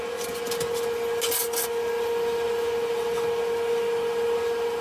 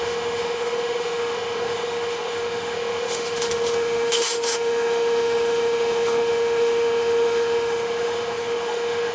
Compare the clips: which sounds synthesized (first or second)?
second